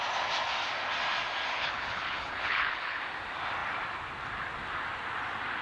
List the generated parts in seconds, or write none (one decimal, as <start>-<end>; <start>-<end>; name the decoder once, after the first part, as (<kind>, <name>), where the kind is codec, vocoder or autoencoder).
1.5-3.0 (codec, HILCodec)